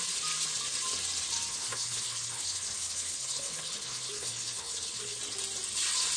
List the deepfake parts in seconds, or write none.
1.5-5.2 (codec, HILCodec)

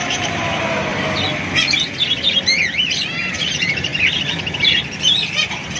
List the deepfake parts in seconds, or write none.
0.0-0.9 (vocoder, BigVGAN v2); 3.3-3.9; 4.6-5.8